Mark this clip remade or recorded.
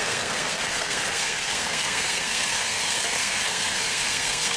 remade